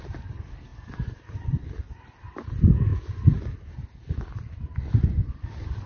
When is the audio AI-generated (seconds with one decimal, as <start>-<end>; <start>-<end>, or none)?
none